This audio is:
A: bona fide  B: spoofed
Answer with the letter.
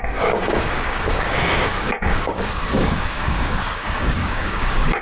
B